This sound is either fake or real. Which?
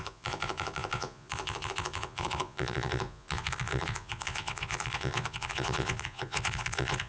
fake